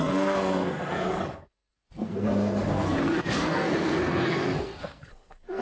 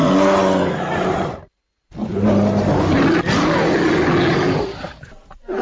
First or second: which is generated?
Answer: first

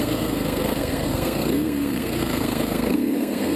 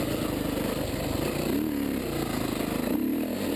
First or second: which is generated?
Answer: first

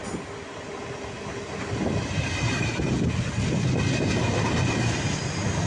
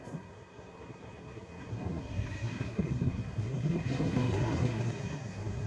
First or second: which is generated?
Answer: second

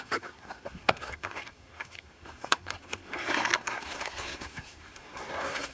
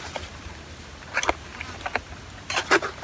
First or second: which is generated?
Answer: first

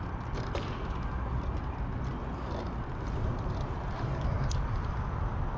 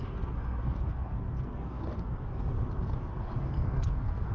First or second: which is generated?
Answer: second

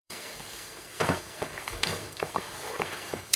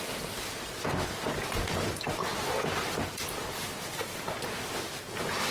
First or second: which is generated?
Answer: first